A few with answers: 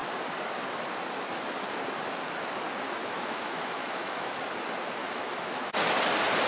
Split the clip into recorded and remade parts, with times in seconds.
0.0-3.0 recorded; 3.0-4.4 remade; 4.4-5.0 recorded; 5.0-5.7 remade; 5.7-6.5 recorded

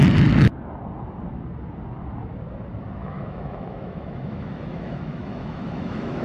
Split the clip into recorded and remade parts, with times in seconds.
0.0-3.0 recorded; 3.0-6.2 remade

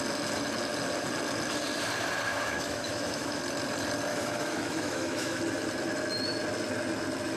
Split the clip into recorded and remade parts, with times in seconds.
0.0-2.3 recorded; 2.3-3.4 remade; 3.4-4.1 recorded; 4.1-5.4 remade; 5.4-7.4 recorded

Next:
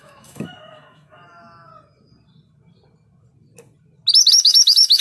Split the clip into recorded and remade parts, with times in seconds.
0.0-1.7 remade; 1.7-4.3 recorded; 4.3-5.0 remade